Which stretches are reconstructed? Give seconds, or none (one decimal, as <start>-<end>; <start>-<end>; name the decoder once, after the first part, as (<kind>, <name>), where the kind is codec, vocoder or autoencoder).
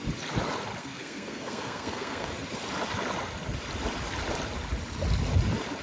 0.8-2.3 (codec, SNAC)